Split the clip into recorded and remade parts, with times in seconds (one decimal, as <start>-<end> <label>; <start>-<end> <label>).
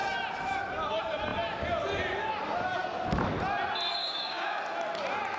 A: 0.0-4.0 recorded; 4.0-4.6 remade; 4.6-5.4 recorded